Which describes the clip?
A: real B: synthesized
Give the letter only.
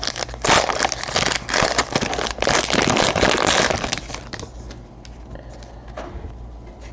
A